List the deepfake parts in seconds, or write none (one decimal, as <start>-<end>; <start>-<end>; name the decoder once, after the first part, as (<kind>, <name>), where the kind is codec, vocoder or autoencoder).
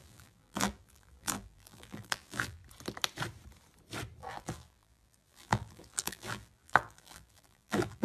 0.0-2.6 (vocoder, BigVGAN v2); 4.2-8.0